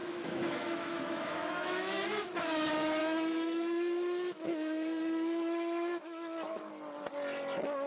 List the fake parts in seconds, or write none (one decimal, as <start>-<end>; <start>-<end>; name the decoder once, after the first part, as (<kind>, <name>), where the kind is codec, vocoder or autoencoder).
0.0-2.0 (autoencoder, DAC-VAE); 3.0-6.7